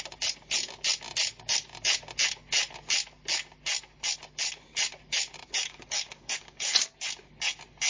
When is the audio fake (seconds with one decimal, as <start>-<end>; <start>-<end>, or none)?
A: 5.4-6.9